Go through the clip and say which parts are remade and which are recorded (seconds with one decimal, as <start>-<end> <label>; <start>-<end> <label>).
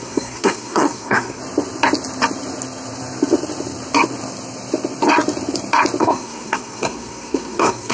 0.0-1.4 remade; 1.4-6.0 recorded; 6.0-7.9 remade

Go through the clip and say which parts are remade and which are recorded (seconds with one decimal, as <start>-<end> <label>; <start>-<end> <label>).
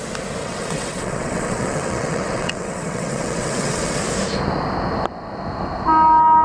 0.0-0.4 recorded; 0.4-4.0 remade; 4.0-6.4 recorded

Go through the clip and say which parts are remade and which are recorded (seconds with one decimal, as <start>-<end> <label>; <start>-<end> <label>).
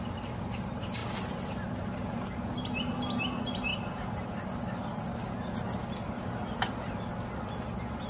0.0-8.1 recorded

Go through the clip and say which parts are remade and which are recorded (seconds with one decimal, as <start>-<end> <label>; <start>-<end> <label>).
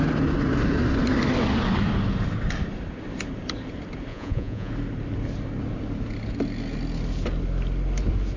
0.0-4.1 recorded; 4.1-4.7 remade; 4.7-8.4 recorded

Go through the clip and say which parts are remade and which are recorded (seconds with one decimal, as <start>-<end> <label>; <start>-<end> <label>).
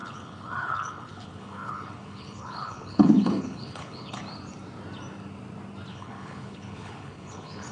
0.0-4.2 remade; 4.2-5.9 recorded; 5.9-7.7 remade